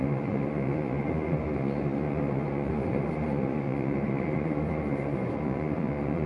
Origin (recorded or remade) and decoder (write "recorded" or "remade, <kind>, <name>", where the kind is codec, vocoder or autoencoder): remade, vocoder, Vocos